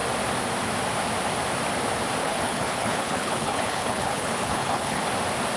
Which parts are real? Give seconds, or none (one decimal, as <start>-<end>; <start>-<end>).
0.0-2.2; 5.0-5.6